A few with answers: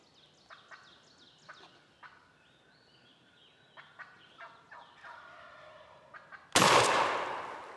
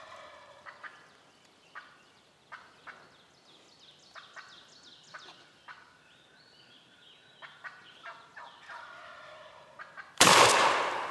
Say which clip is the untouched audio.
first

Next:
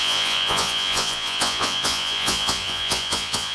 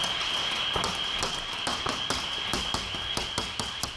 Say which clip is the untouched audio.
second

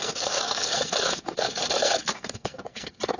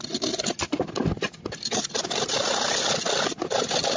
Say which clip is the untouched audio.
second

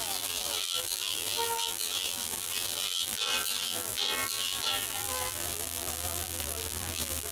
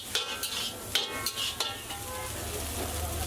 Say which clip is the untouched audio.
second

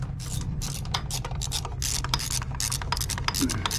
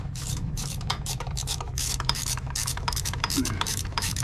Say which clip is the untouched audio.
first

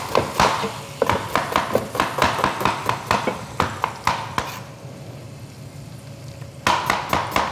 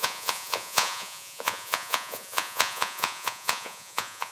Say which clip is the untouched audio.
first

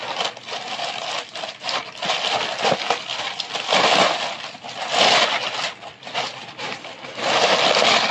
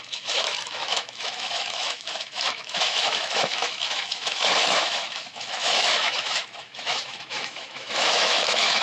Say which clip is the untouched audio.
first